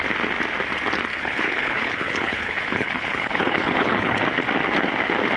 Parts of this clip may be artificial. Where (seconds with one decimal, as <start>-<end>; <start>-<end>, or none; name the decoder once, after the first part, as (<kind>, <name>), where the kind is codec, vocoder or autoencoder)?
1.1-4.2 (codec, HILCodec)